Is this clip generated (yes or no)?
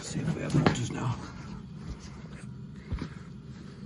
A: no